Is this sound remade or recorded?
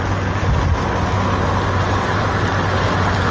recorded